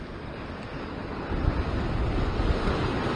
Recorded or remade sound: recorded